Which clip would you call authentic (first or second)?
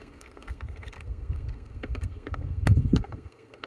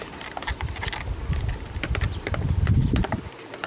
second